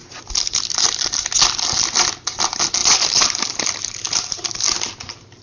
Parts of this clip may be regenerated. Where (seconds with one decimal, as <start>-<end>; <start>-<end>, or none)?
none